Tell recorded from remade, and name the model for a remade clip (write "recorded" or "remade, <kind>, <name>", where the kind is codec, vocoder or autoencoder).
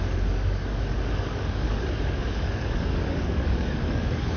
remade, codec, DAC